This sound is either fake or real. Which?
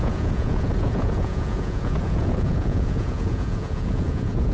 fake